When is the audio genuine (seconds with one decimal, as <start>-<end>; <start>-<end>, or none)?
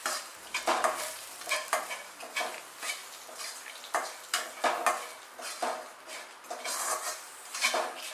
3.0-6.8